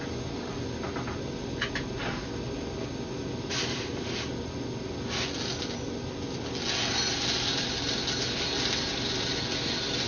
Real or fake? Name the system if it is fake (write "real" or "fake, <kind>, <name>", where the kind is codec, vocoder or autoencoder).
real